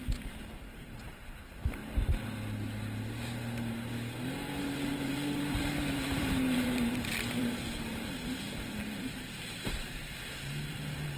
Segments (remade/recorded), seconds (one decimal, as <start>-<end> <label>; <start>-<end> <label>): 0.0-1.8 remade; 1.8-4.6 recorded; 4.6-11.2 remade